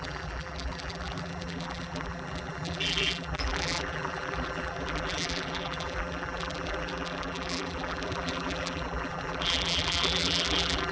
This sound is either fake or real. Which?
fake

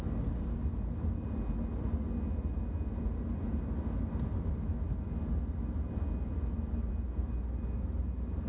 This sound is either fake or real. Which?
real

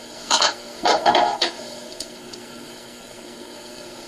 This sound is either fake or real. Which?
fake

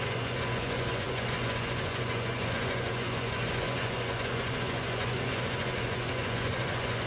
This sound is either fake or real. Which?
fake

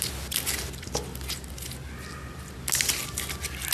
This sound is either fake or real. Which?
real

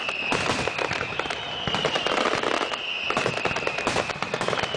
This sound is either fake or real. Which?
real